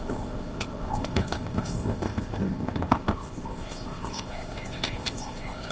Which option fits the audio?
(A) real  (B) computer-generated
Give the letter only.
B